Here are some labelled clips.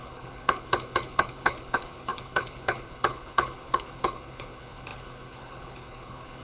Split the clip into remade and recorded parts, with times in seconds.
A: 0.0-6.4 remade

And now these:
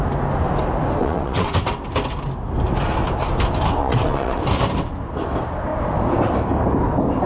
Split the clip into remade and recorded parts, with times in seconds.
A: 0.0-1.0 recorded; 1.0-1.5 remade; 1.5-3.8 recorded; 3.8-4.4 remade; 4.4-7.3 recorded

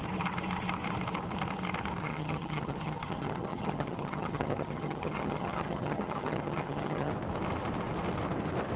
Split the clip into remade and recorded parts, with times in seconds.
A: 0.0-2.0 recorded; 2.0-7.1 remade; 7.1-8.8 recorded

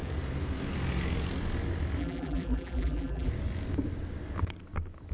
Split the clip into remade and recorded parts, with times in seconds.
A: 0.0-2.0 recorded; 2.0-3.3 remade; 3.3-5.1 recorded

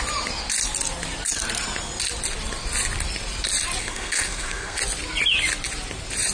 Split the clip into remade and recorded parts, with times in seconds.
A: 0.0-3.8 recorded; 3.8-4.8 remade; 4.8-6.3 recorded

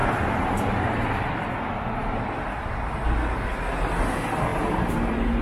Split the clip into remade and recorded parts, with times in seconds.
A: 0.0-5.4 recorded